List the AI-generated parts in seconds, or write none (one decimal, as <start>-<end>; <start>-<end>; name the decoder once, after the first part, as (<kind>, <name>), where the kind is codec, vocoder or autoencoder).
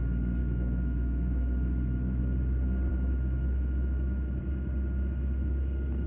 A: 0.4-2.2 (autoencoder, DAC-VAE); 2.9-4.4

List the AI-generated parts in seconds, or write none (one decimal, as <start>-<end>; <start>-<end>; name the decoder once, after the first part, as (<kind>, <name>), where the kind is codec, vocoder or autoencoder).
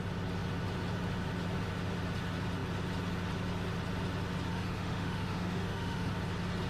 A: 4.5-6.1 (autoencoder, DAC-VAE)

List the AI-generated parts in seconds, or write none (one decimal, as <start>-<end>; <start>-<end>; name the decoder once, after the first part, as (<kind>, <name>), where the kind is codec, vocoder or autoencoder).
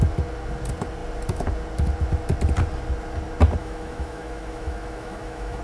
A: 3.6-5.6 (autoencoder, DAC-VAE)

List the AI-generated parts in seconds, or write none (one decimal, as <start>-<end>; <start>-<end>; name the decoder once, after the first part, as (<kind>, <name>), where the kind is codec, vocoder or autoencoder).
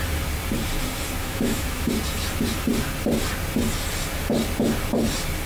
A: 1.2-1.9 (autoencoder, DAC-VAE)